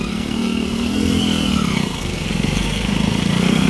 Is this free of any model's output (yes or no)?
no